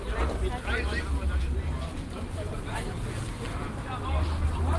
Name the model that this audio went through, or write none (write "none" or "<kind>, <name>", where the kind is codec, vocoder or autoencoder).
none